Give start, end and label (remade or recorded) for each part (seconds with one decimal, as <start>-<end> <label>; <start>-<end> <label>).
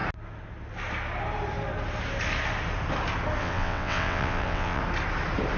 0.0-3.4 recorded; 3.4-4.8 remade; 4.8-5.6 recorded